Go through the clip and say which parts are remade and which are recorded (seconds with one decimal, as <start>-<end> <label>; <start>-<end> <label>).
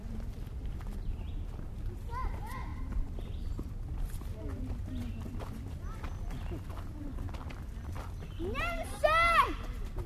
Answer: 0.0-10.1 recorded